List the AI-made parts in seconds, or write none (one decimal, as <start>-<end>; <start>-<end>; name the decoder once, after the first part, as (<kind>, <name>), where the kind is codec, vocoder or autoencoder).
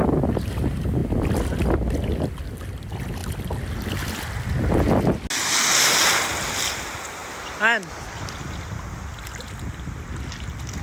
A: none